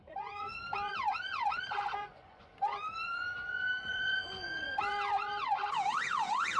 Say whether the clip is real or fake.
fake